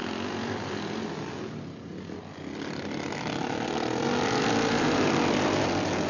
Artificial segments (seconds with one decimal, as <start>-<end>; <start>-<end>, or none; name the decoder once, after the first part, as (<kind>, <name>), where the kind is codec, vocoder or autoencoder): none